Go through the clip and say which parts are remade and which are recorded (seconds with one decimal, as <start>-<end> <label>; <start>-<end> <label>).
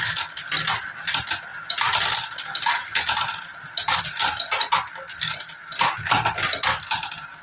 0.0-7.4 recorded